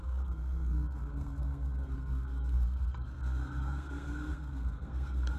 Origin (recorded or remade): remade